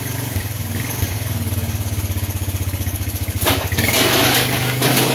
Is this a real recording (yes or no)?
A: no